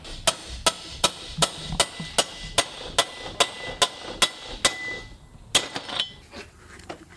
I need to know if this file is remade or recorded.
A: recorded